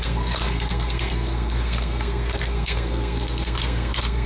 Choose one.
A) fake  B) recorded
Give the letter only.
A